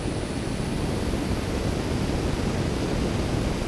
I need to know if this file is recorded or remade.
recorded